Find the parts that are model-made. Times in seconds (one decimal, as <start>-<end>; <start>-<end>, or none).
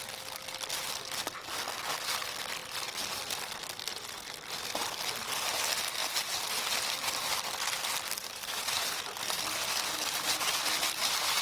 none